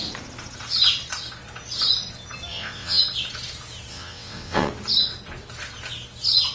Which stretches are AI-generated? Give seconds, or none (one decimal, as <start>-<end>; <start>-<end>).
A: 2.5-3.0; 3.9-4.7